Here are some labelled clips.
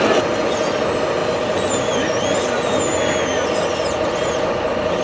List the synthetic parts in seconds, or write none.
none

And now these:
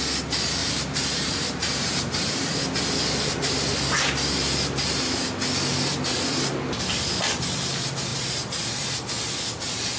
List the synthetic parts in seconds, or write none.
0.6-2.6 (vocoder, BigVGAN v2); 8.1-8.8